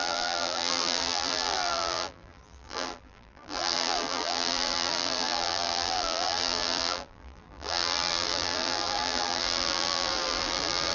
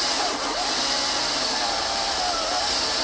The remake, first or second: first